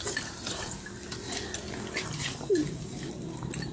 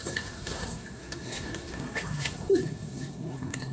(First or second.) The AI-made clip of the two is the second